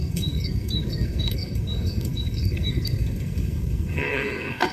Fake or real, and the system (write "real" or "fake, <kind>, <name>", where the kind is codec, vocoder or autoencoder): fake, codec, SNAC